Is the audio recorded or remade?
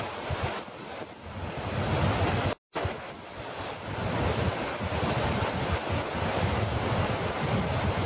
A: recorded